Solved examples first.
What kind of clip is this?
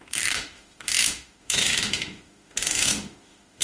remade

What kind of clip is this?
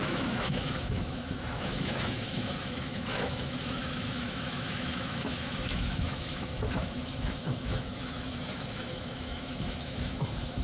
remade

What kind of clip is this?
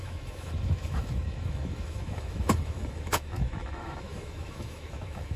remade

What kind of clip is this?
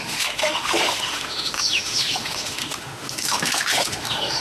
remade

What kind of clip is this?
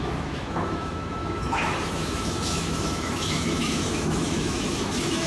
remade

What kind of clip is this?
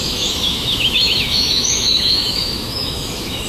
remade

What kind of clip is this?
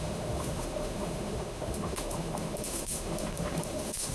remade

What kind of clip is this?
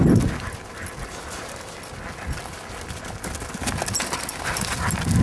recorded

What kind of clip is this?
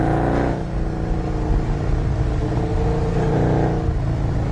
recorded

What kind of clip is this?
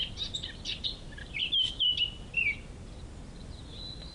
recorded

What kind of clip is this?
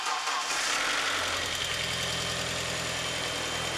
recorded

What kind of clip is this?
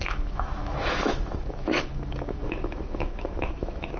remade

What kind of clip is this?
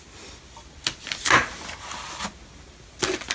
recorded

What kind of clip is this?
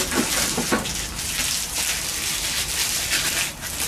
recorded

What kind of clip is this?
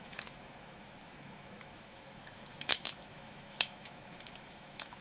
remade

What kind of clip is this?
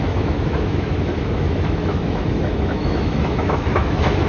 remade